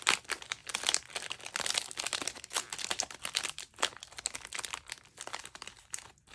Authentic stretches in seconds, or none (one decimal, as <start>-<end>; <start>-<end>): 0.0-6.3